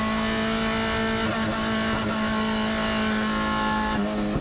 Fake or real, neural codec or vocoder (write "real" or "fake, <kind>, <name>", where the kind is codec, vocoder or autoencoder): real